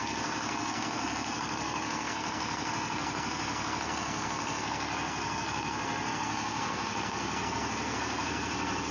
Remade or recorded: remade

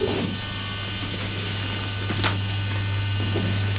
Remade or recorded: recorded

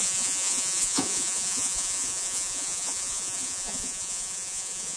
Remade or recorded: remade